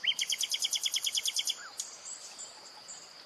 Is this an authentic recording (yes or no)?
yes